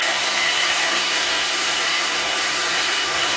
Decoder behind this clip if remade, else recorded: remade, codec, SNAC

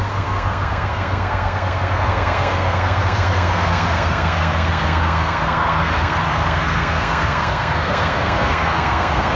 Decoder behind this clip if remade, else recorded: remade, codec, SNAC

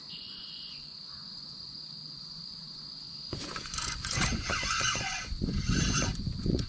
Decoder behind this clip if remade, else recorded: remade, vocoder, Vocos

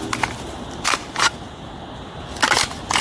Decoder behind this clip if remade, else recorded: recorded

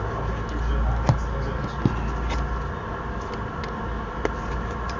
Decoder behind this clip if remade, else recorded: recorded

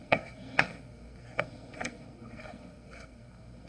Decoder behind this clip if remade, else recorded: remade, codec, SNAC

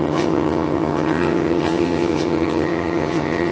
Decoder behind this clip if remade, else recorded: remade, vocoder, HiFi-GAN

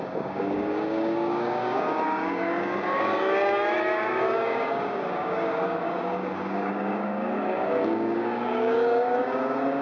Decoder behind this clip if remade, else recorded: remade, codec, DAC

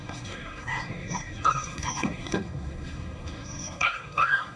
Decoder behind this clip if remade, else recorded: remade, codec, SNAC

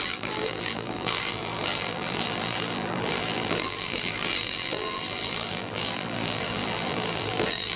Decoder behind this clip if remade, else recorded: remade, vocoder, BigVGAN v2